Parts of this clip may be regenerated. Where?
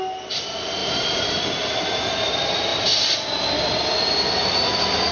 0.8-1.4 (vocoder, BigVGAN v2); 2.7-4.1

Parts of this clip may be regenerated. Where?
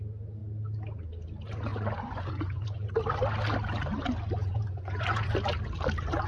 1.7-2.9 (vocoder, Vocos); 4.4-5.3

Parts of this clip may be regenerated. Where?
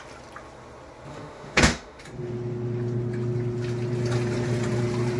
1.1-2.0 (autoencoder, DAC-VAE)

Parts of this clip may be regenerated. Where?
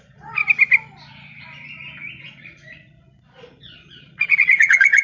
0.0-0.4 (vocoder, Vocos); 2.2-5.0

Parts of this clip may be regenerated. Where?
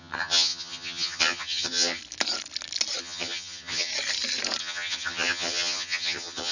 0.0-2.0 (vocoder, HiFi-GAN); 3.0-3.9; 4.6-6.5